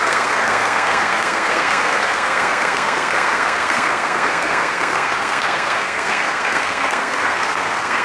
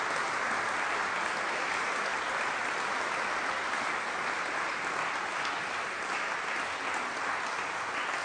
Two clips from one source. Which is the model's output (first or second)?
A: first